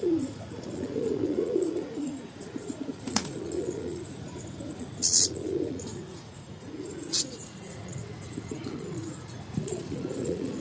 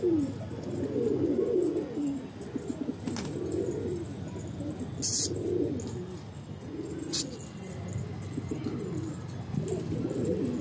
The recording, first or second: second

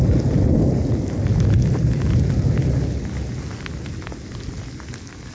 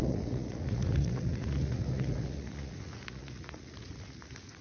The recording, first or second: first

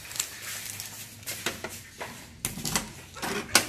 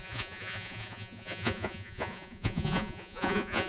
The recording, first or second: first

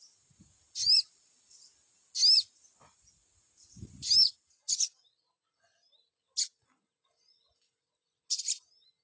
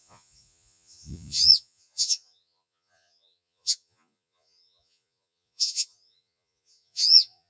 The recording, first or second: first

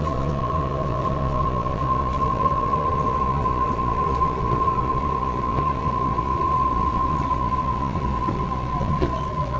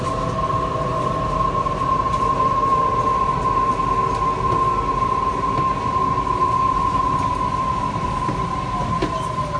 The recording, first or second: second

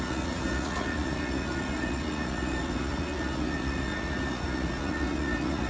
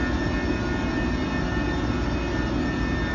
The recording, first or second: second